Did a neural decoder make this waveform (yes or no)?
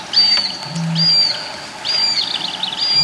no